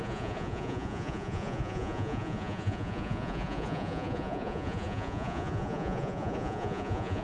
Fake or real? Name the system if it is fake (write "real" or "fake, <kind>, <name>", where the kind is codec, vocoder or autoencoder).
fake, vocoder, Vocos